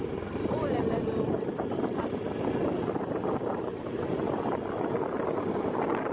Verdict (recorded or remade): recorded